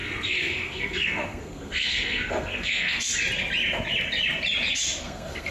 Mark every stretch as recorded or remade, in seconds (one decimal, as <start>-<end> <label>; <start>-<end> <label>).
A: 0.0-3.1 remade; 3.1-5.0 recorded; 5.0-5.5 remade